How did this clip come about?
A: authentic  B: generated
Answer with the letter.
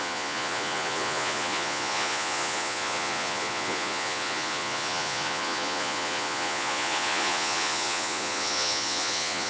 B